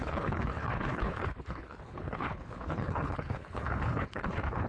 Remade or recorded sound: remade